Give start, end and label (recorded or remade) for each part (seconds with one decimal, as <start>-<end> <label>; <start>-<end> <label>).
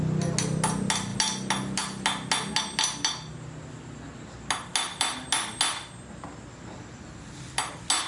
0.0-8.1 recorded